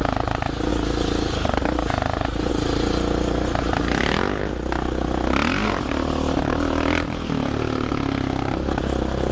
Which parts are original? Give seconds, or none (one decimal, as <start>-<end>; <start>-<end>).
0.0-9.3